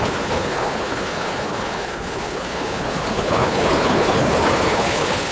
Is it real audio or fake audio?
fake